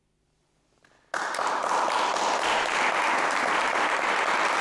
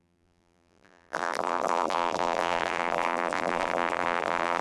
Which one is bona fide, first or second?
first